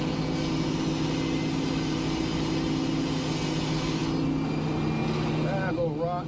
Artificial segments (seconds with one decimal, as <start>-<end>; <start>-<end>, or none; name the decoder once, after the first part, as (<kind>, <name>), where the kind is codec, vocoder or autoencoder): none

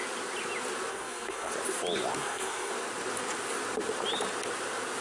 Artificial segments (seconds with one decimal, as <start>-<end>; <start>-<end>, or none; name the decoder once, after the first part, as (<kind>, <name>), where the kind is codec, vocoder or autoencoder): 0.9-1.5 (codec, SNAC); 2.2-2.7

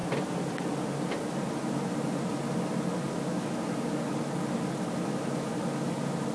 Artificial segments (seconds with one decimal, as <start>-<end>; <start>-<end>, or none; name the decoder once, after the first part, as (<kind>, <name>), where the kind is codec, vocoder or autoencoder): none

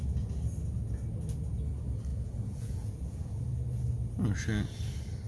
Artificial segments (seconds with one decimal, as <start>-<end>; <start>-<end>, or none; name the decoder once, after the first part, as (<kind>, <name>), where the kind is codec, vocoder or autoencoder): 2.1-3.4 (vocoder, Vocos)

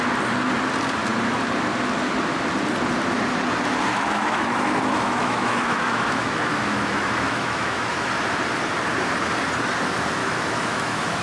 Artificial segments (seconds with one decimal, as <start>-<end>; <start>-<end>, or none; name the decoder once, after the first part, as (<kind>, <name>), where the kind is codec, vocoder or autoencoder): 3.9-8.1 (autoencoder, DAC-VAE); 10.2-11.2

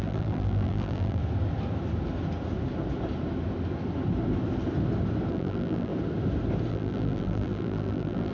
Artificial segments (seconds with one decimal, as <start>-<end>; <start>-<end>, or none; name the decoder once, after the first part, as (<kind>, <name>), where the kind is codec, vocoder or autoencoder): 0.0-1.2 (vocoder, BigVGAN v2); 5.3-5.9; 6.7-8.3